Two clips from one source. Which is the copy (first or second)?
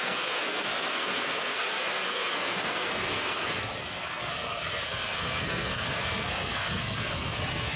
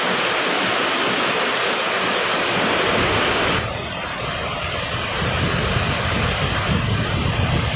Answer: first